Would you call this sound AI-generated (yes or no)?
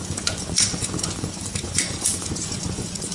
yes